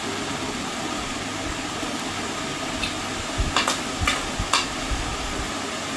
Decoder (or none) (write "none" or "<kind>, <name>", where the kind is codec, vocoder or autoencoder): none